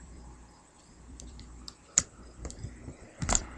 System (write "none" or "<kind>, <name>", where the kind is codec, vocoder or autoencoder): vocoder, BigVGAN v2